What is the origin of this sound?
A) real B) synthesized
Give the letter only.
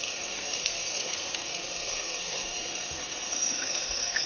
B